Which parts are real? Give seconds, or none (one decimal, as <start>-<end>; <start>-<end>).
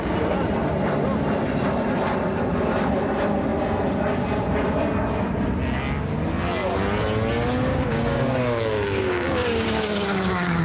0.0-7.7